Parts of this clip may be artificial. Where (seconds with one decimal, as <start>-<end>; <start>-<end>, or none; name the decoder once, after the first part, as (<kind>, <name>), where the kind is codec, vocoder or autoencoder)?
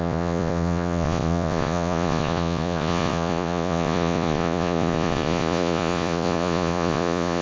0.0-7.4 (vocoder, Vocos)